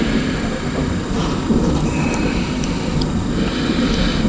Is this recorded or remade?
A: recorded